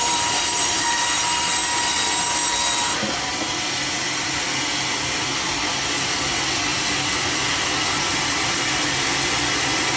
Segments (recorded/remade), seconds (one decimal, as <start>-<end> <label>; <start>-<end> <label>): 0.0-1.0 remade; 1.0-10.0 recorded